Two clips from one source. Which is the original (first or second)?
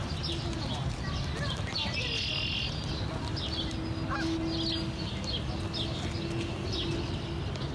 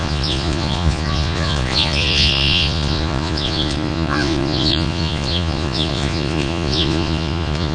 first